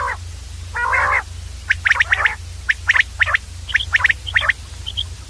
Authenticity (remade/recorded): recorded